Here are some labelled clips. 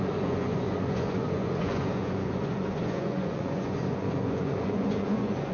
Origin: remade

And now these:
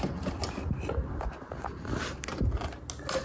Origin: recorded